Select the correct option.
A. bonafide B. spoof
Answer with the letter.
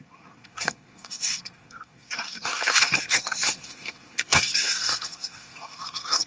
B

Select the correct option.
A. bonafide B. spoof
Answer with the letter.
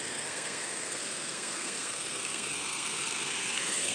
B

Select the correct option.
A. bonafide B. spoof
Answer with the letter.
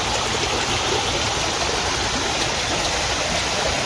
A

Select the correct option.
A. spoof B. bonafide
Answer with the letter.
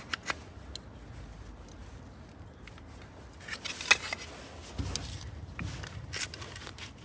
B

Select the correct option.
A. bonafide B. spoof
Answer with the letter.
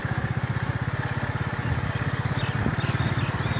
A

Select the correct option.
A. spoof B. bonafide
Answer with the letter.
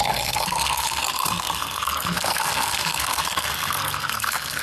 A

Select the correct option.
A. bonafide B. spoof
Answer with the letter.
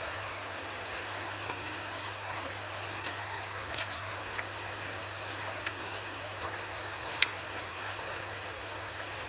B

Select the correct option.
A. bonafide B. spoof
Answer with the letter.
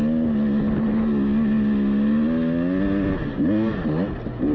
A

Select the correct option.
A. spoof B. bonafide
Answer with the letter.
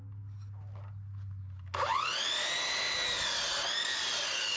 B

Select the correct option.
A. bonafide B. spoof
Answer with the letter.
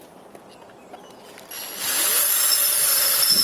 A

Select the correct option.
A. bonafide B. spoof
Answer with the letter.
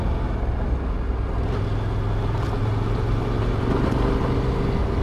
A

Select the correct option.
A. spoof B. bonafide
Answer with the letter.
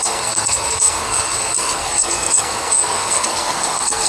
A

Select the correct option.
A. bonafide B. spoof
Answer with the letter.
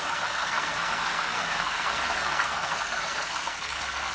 B